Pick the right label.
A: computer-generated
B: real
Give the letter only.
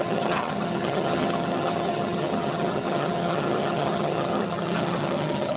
A